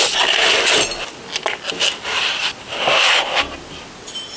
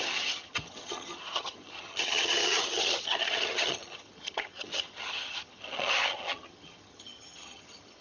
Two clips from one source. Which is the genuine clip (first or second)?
first